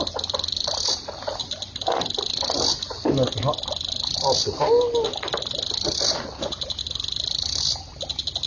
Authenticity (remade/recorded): recorded